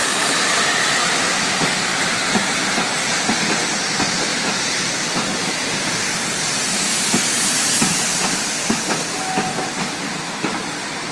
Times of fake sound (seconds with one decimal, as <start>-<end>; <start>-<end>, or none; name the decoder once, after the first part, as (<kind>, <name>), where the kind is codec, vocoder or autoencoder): 0.0-1.0 (vocoder, BigVGAN v2); 1.9-2.6; 4.3-8.2